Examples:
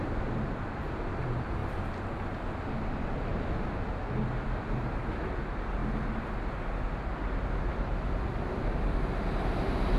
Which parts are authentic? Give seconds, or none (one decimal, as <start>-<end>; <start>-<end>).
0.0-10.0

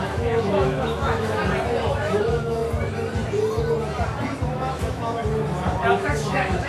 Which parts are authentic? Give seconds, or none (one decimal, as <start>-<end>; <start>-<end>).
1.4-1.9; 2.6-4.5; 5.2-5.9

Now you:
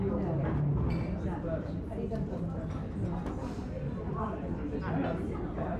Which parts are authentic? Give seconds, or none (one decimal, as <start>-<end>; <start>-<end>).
0.0-5.8